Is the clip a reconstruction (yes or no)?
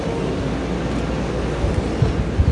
no